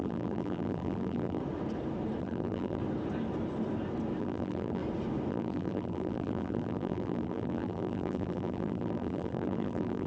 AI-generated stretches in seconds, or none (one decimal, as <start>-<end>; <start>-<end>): 0.0-1.4; 2.2-2.8; 4.2-4.8; 5.3-10.1